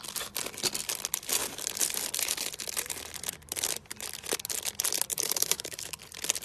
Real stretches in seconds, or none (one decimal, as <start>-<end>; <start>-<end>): 0.0-5.1; 6.0-6.4